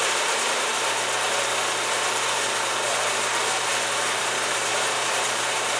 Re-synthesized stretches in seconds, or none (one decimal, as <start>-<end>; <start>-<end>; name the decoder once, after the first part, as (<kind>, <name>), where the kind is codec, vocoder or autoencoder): 0.0-0.7 (vocoder, BigVGAN v2); 4.2-5.8